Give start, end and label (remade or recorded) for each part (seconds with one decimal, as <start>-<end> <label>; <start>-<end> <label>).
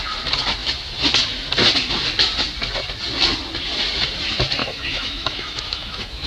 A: 0.0-4.6 recorded; 4.6-6.3 remade